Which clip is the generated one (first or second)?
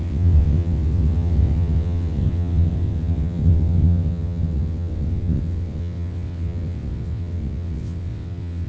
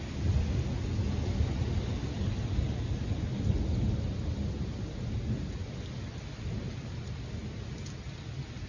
first